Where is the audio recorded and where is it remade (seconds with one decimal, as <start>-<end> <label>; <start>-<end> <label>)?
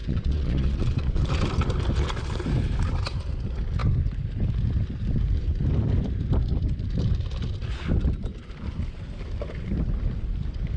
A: 0.0-1.3 remade; 1.3-10.8 recorded